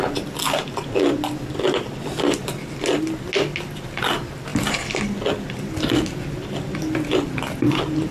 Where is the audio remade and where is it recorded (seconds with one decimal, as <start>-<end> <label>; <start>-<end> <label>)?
0.0-8.1 recorded